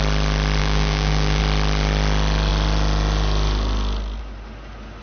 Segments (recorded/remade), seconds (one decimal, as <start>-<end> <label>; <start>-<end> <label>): 0.0-0.6 recorded; 0.6-1.4 remade; 1.4-5.0 recorded

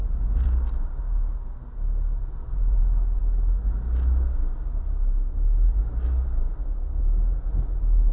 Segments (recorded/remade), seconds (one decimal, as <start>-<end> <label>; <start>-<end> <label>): 0.0-0.5 remade; 0.5-2.2 recorded; 2.2-2.8 remade; 2.8-8.1 recorded

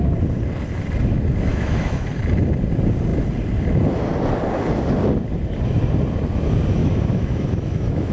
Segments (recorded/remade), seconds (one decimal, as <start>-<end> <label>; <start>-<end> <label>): 0.0-1.5 recorded; 1.5-2.1 remade; 2.1-6.8 recorded; 6.8-8.1 remade

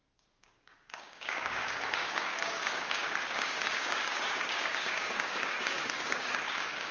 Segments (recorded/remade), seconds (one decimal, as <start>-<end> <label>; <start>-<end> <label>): 0.0-6.9 remade

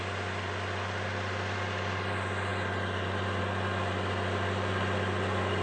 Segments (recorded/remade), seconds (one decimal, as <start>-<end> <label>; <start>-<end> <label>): 0.0-5.6 recorded